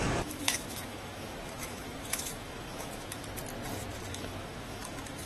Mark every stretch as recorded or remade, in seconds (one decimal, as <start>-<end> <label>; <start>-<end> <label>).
0.0-3.2 remade; 3.2-4.1 recorded; 4.1-5.3 remade